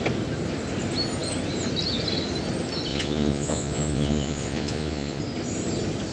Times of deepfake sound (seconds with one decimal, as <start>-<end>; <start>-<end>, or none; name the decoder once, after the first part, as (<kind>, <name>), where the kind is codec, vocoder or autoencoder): 2.9-5.2 (vocoder, Vocos)